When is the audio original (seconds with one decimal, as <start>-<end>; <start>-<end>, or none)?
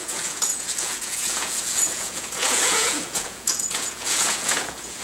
none